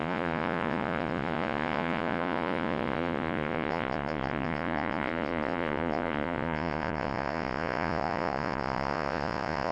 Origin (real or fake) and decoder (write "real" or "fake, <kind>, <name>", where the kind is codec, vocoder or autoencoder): fake, vocoder, Vocos